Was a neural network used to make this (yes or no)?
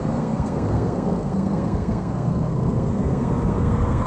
yes